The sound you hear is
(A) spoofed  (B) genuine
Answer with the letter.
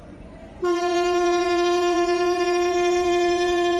A